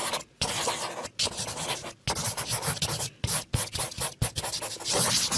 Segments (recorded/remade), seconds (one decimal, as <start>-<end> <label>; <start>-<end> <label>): 0.0-0.6 remade; 0.6-5.4 recorded